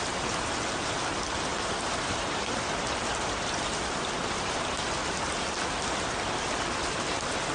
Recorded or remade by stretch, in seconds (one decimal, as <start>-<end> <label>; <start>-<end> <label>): 0.0-1.5 recorded; 1.5-2.5 remade; 2.5-3.0 recorded; 3.0-7.1 remade; 7.1-7.5 recorded